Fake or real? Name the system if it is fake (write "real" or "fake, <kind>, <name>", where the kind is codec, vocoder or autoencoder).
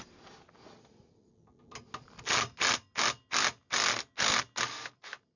real